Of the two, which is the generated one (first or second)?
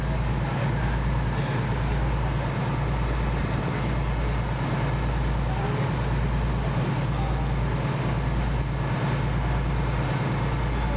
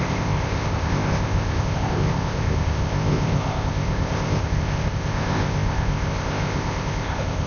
second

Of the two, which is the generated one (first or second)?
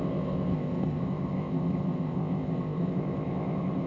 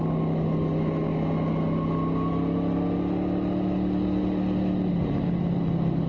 first